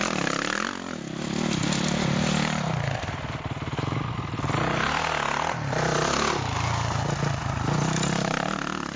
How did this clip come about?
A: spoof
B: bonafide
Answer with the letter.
B